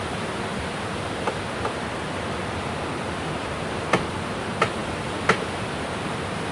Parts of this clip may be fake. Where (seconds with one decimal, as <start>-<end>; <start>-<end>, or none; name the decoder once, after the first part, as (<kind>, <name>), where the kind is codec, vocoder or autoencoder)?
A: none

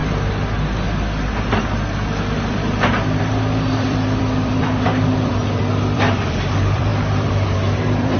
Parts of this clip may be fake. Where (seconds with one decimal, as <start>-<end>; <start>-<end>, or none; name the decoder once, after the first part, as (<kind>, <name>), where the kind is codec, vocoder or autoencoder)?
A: 3.2-8.2 (vocoder, BigVGAN v2)

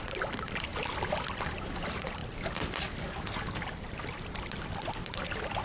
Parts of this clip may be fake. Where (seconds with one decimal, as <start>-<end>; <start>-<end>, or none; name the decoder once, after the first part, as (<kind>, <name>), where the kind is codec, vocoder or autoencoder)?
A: 0.0-0.7 (vocoder, BigVGAN v2); 1.3-2.2; 4.1-5.6